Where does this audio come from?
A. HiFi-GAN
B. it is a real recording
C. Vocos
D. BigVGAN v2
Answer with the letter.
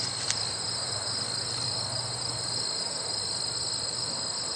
B